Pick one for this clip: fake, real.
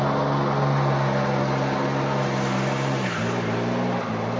real